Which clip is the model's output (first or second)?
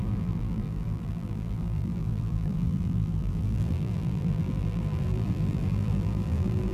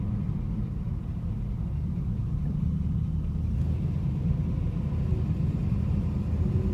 first